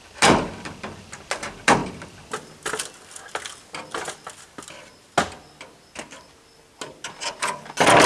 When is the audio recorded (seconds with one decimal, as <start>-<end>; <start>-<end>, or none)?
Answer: 0.0-8.1